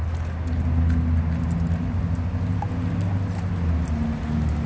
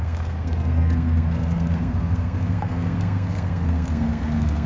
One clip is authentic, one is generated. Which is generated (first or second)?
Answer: second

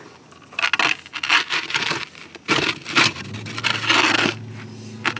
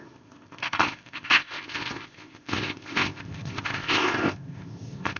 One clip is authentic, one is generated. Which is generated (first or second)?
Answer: second